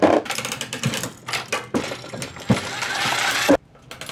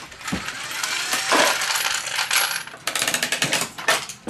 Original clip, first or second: first